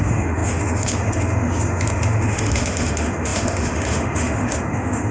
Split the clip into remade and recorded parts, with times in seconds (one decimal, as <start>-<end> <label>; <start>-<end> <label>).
0.0-5.1 remade